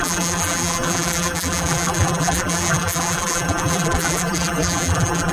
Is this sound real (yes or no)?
no